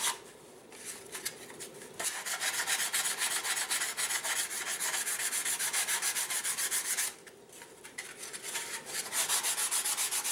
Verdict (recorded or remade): recorded